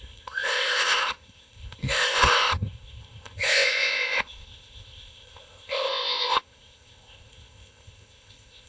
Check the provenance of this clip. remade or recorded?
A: remade